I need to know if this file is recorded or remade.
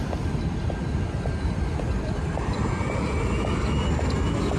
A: recorded